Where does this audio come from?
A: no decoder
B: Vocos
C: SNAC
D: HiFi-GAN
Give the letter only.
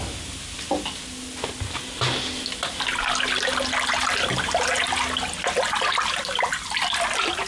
A